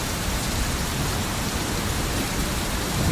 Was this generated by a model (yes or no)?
yes